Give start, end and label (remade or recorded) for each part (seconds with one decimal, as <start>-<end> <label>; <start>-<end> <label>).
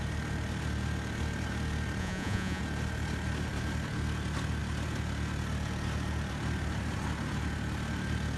0.0-2.0 recorded; 2.0-2.6 remade; 2.6-8.4 recorded